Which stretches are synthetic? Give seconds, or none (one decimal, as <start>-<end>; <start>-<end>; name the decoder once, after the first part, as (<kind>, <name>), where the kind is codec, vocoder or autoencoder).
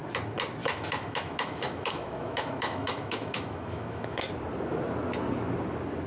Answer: 0.6-4.3 (autoencoder, DAC-VAE)